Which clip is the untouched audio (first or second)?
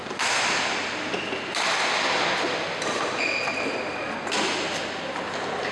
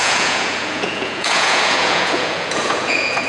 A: first